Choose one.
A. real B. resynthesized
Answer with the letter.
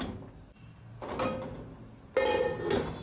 A